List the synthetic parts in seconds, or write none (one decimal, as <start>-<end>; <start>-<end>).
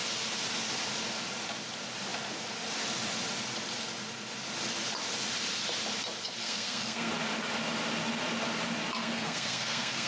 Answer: 6.4-7.1; 9.0-10.1